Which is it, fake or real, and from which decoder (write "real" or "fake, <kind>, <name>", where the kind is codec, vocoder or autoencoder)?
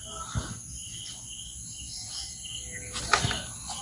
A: real